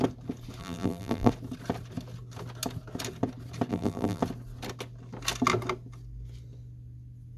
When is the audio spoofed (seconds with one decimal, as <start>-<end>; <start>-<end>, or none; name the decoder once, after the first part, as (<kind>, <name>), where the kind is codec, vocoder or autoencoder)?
0.6-1.3 (vocoder, BigVGAN v2); 3.7-4.2